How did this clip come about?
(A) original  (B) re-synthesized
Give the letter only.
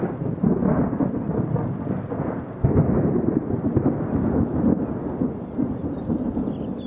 A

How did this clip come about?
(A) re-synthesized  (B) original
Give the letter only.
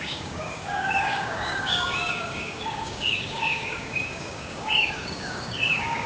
A